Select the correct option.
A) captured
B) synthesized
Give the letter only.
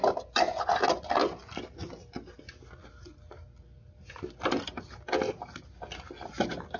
A